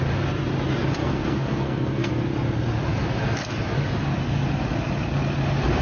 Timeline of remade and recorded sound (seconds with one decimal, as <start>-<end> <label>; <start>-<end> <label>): 0.0-1.0 recorded; 1.0-2.1 remade; 2.1-5.8 recorded

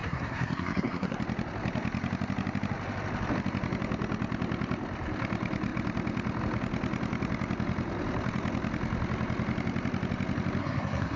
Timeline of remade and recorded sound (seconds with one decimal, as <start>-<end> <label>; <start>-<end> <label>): 0.0-1.2 remade; 1.2-10.6 recorded; 10.6-11.2 remade

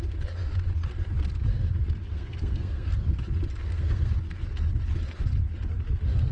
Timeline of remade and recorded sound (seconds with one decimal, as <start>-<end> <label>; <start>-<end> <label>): 0.0-2.1 recorded; 2.1-3.2 remade; 3.2-3.6 recorded; 3.6-4.1 remade; 4.1-6.3 recorded

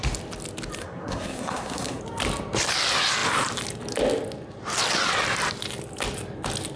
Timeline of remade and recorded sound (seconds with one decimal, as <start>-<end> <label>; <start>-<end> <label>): 0.0-0.8 recorded; 0.8-2.0 remade; 2.0-6.8 recorded

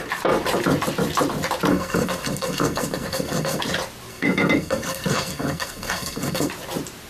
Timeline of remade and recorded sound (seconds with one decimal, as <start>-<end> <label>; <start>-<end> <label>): 0.0-1.7 recorded; 1.7-3.6 remade; 3.6-4.1 recorded; 4.1-6.5 remade; 6.5-7.1 recorded